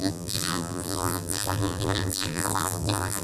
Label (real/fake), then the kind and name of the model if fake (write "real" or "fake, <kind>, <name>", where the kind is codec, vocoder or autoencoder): fake, vocoder, BigVGAN v2